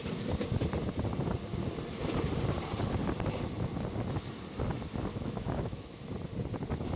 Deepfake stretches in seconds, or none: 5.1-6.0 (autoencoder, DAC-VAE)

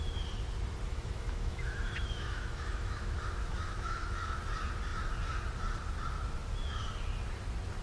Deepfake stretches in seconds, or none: 0.9-4.4 (autoencoder, DAC-VAE)